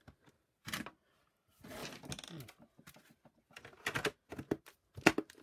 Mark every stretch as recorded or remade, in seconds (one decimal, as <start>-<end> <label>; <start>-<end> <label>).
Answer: 0.0-5.4 recorded